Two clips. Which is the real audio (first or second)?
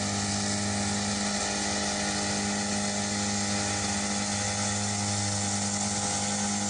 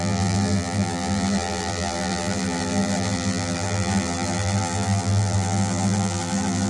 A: first